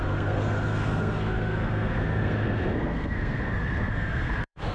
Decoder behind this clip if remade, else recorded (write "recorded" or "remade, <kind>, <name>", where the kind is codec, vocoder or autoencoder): remade, codec, SNAC